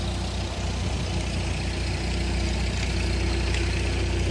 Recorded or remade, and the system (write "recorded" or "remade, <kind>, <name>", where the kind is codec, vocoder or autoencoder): recorded